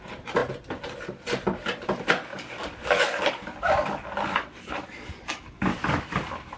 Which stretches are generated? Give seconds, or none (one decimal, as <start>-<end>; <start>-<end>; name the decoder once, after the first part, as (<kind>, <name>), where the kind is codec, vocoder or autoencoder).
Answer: 2.3-6.6 (codec, DAC)